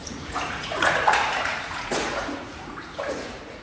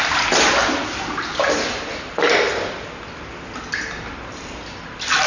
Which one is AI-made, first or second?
first